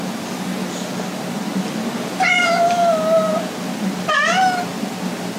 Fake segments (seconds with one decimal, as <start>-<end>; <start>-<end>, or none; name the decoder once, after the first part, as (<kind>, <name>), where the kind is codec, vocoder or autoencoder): none